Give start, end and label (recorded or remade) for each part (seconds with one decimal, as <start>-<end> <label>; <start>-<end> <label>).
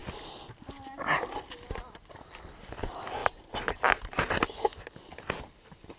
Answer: 0.0-1.7 recorded; 1.7-3.2 remade; 3.2-6.0 recorded